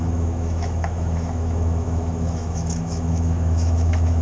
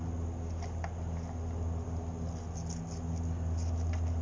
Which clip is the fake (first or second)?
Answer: first